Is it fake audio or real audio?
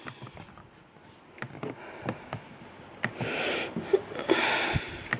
real